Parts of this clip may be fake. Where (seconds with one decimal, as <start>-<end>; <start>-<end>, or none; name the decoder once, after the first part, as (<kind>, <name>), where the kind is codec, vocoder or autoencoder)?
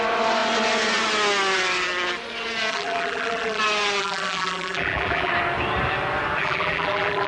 2.7-3.6 (vocoder, BigVGAN v2); 4.0-5.3; 6.4-7.3